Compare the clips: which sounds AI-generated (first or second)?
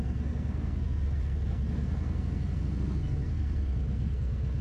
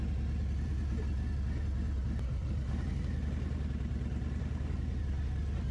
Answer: first